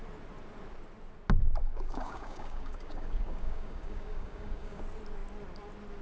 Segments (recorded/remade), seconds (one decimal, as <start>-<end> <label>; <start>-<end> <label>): 0.0-1.6 recorded; 1.6-4.8 remade; 4.8-6.0 recorded